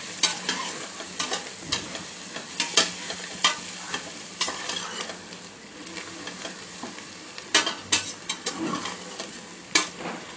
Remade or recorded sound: recorded